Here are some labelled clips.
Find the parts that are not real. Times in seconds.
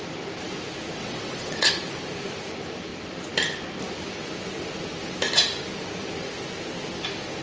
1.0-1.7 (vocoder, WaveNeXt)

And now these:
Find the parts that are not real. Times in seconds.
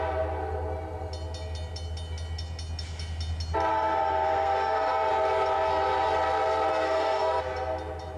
3.7-5.1 (codec, SNAC); 6.7-7.4